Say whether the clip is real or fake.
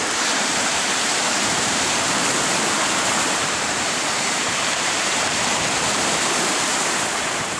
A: fake